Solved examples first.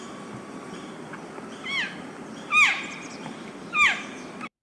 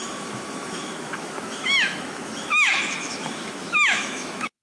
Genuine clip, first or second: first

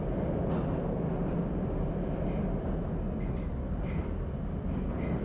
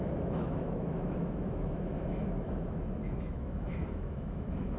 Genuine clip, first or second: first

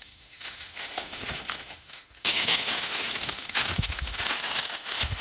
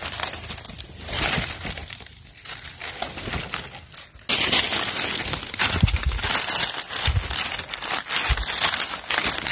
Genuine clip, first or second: second